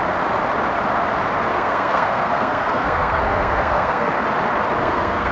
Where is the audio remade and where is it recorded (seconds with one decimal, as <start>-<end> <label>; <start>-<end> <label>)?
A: 0.0-1.5 recorded; 1.5-4.1 remade; 4.1-4.8 recorded; 4.8-5.3 remade